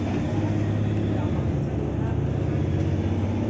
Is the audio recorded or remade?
recorded